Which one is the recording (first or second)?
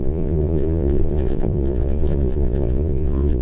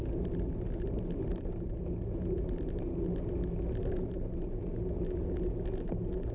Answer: second